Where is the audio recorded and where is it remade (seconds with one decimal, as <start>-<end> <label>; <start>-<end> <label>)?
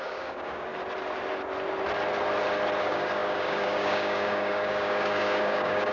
0.0-0.7 remade; 0.7-2.8 recorded; 2.8-5.9 remade